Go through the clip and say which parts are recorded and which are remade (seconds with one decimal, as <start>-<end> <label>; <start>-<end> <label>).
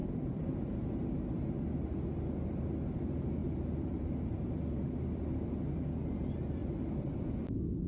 0.0-3.4 recorded; 3.4-5.2 remade; 5.2-6.6 recorded; 6.6-7.3 remade; 7.3-7.9 recorded